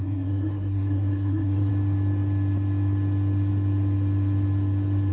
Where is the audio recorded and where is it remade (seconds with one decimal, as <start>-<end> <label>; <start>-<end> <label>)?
0.0-1.7 remade; 1.7-5.1 recorded